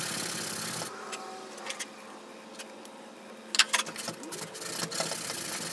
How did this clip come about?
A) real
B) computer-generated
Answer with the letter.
A